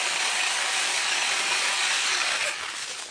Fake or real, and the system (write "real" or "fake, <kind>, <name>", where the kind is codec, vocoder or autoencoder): fake, codec, DAC